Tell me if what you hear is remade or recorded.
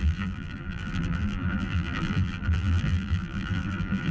remade